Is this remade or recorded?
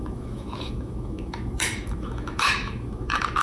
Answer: remade